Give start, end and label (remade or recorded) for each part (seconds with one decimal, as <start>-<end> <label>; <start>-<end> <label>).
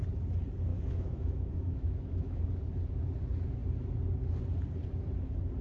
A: 0.0-0.7 recorded; 0.7-2.4 remade; 2.4-5.6 recorded